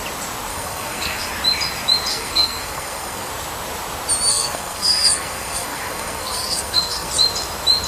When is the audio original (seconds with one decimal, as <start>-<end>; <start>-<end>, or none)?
0.0-0.5; 1.3-2.1; 3.3-4.3; 7.1-7.9